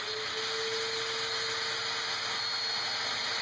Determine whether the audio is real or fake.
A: real